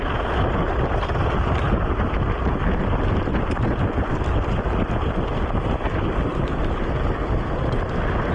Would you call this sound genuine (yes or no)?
yes